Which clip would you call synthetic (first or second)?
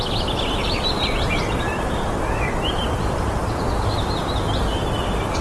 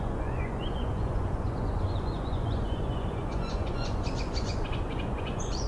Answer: second